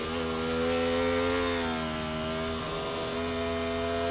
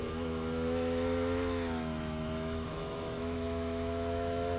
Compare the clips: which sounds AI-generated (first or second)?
second